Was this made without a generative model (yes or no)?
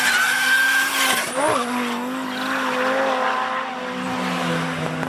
yes